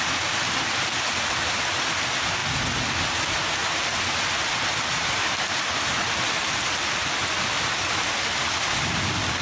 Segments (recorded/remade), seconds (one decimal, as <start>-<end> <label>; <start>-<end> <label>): 0.0-9.4 recorded